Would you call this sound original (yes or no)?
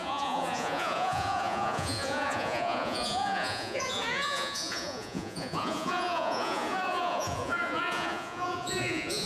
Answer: no